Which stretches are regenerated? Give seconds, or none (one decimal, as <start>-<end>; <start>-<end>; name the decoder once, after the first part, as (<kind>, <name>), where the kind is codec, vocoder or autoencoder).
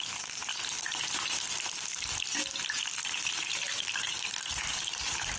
0.0-0.5 (vocoder, BigVGAN v2); 3.3-3.7; 4.9-5.4